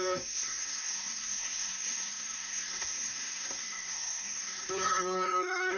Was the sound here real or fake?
fake